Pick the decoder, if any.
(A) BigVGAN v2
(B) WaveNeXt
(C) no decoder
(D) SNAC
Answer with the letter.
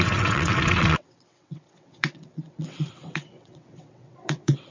B